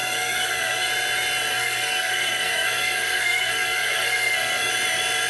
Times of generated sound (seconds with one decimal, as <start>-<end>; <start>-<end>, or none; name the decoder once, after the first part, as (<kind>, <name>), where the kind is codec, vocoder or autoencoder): 0.0-0.9 (codec, SNAC); 1.5-4.7